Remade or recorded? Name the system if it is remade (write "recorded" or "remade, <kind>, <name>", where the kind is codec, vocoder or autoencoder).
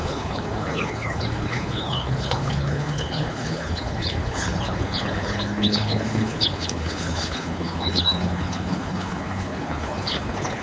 remade, codec, HILCodec